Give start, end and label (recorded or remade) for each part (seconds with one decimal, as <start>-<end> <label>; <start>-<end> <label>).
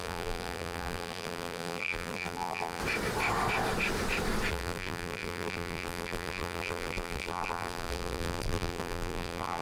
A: 0.0-2.8 remade; 2.8-4.5 recorded; 4.5-9.6 remade